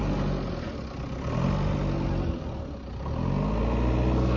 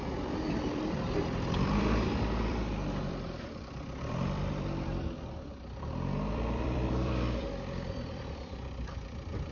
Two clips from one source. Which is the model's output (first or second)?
second